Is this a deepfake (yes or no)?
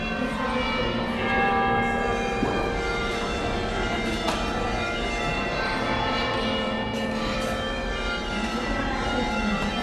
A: yes